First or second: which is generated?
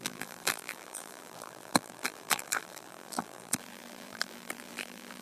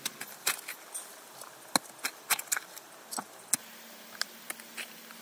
first